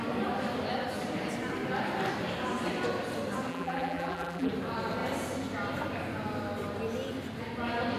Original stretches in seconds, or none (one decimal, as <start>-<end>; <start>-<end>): 0.0-3.5; 4.5-8.0